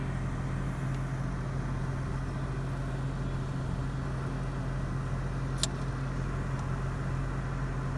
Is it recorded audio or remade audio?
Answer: recorded